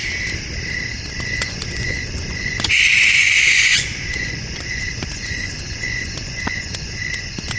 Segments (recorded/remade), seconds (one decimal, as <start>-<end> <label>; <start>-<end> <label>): 0.0-1.1 recorded; 1.1-7.6 remade